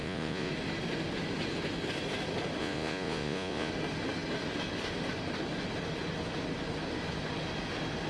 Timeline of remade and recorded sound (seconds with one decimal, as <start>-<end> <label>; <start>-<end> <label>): 0.0-0.5 remade; 0.5-2.6 recorded; 2.6-3.7 remade; 3.7-8.1 recorded